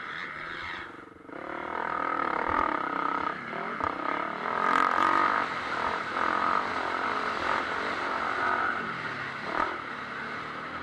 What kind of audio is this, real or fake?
fake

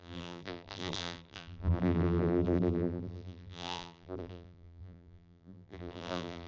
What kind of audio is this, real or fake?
fake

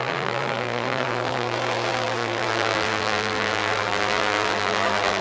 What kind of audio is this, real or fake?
fake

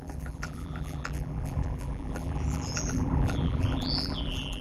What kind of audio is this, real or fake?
fake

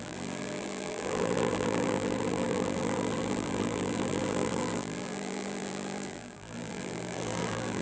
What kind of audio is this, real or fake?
fake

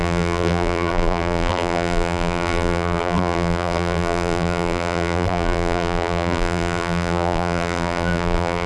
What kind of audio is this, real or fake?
fake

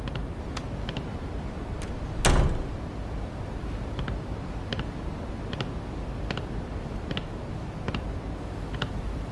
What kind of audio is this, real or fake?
real